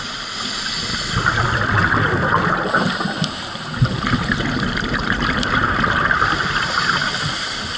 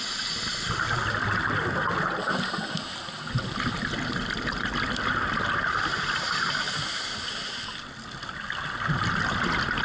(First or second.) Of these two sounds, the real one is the second